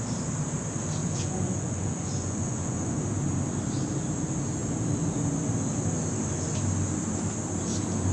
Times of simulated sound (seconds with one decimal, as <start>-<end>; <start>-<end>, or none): 1.0-3.0